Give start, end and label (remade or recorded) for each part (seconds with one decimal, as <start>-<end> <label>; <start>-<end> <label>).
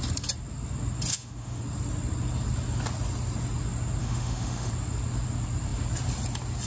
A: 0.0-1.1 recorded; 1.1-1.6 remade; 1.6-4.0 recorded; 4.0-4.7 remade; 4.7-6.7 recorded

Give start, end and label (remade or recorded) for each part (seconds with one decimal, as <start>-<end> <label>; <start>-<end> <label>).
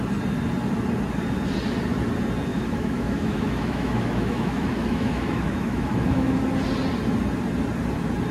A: 0.0-2.5 recorded; 2.5-6.4 remade; 6.4-8.3 recorded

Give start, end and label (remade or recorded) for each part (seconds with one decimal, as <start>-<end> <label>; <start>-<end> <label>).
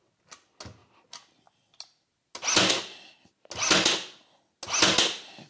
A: 0.0-5.5 recorded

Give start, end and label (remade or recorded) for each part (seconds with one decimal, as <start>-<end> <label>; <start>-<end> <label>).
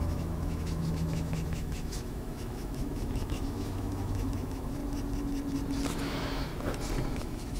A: 0.0-4.8 remade; 4.8-6.0 recorded; 6.0-6.5 remade; 6.5-7.1 recorded; 7.1-7.6 remade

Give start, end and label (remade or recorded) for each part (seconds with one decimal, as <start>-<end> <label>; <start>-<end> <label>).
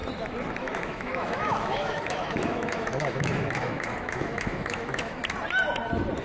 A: 0.0-0.6 recorded; 0.6-5.2 remade; 5.2-6.2 recorded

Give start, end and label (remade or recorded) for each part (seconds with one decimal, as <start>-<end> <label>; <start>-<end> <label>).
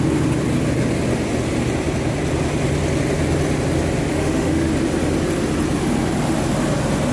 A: 0.0-4.1 recorded; 4.1-4.7 remade; 4.7-7.1 recorded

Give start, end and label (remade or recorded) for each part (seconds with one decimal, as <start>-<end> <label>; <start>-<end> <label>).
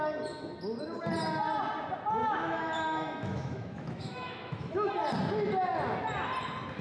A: 0.0-2.2 recorded; 2.2-4.9 remade; 4.9-6.8 recorded